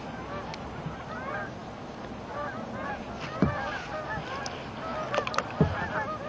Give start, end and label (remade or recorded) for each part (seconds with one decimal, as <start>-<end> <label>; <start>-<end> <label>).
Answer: 0.0-6.3 recorded